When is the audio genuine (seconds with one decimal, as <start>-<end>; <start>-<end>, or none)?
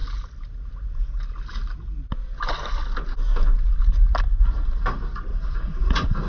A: 0.0-5.3